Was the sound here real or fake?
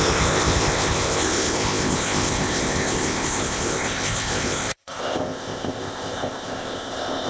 fake